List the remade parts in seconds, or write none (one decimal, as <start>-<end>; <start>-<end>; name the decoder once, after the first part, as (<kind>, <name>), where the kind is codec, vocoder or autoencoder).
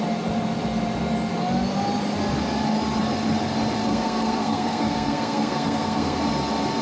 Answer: 3.9-6.2 (codec, SNAC)